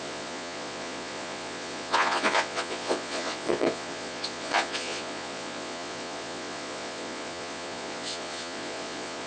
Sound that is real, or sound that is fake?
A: fake